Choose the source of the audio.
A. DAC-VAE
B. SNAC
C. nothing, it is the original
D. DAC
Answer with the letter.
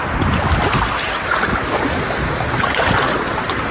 C